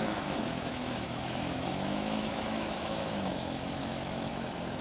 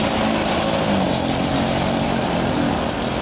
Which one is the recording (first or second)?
second